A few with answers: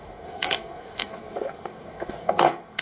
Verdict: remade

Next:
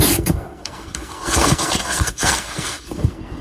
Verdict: remade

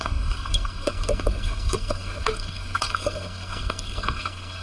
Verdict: remade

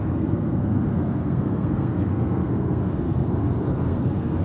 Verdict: remade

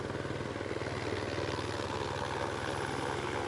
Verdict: recorded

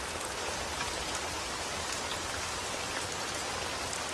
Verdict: recorded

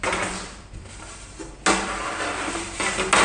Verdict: recorded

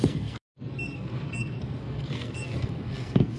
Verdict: remade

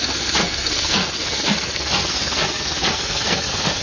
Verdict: remade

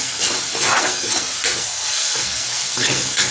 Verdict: remade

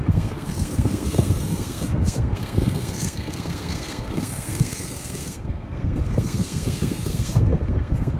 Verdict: remade